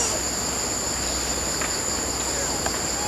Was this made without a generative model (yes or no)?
yes